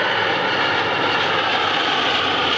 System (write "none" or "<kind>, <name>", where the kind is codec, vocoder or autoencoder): none